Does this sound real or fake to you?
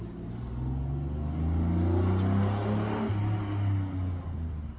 real